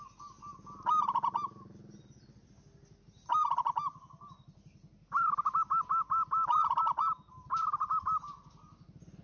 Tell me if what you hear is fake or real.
real